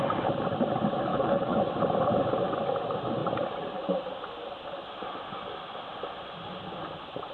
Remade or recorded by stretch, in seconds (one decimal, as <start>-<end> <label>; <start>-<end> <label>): 0.0-1.1 recorded; 1.1-1.6 remade; 1.6-7.3 recorded